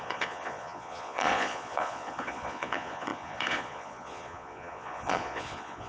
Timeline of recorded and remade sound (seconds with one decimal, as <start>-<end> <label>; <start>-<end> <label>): 0.0-5.9 remade